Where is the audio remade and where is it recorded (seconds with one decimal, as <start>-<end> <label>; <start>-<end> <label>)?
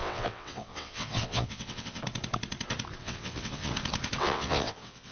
0.0-2.0 remade; 2.0-3.0 recorded; 3.0-3.7 remade; 3.7-4.2 recorded; 4.2-5.1 remade